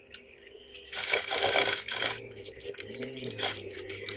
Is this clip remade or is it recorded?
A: remade